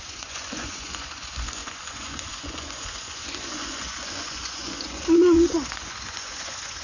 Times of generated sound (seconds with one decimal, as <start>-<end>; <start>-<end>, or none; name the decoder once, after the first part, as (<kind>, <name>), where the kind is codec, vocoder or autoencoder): 0.0-6.8 (vocoder, Vocos)